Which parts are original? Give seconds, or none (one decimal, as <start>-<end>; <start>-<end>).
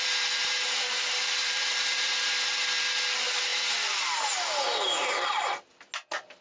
0.0-1.4; 2.1-6.4